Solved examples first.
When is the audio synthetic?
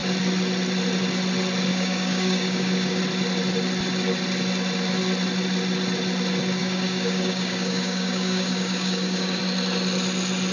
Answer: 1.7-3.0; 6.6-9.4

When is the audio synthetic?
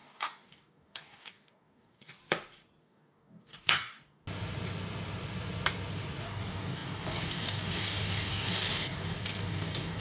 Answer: 0.0-2.2; 2.8-4.2; 6.2-10.0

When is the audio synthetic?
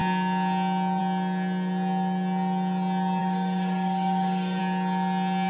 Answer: 3.2-4.6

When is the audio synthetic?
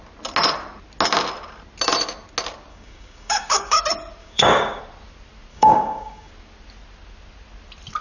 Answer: 2.7-3.8; 4.2-4.8; 5.5-6.3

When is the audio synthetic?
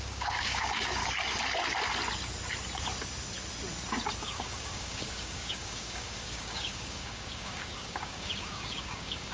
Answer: 0.0-1.0; 4.2-9.3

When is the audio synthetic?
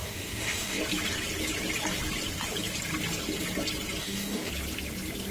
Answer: 0.0-0.8; 4.0-4.5